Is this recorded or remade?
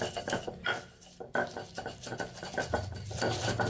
recorded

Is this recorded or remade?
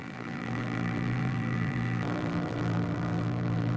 remade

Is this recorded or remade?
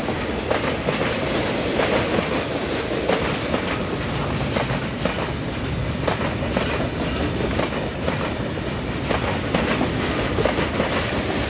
recorded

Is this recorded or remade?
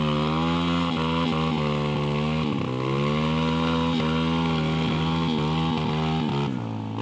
recorded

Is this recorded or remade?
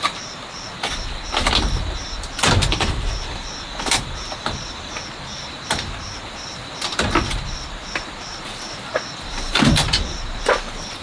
remade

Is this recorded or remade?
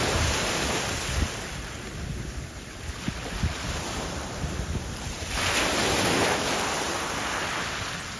recorded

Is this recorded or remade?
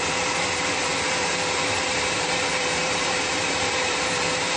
remade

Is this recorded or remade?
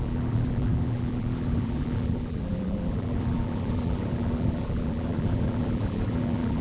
remade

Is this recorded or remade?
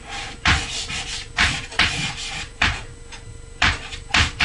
remade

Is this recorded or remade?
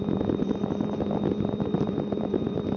remade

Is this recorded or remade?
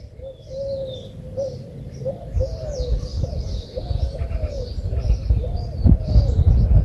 remade